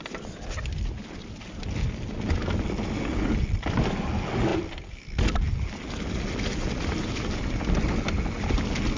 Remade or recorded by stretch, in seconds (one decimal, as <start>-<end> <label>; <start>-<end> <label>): 0.0-9.0 recorded